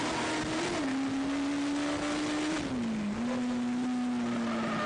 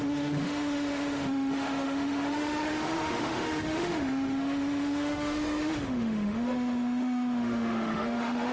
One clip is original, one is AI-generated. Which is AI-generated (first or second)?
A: second